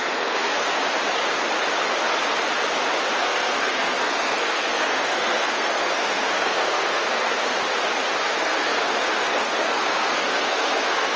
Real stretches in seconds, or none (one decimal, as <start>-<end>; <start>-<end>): 0.8-3.2; 7.5-8.2